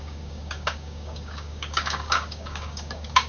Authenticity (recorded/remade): remade